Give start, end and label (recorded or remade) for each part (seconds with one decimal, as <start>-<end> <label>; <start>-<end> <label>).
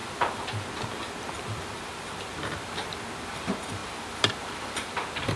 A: 0.0-2.8 remade; 2.8-3.3 recorded; 3.3-3.8 remade; 3.8-4.3 recorded; 4.3-5.4 remade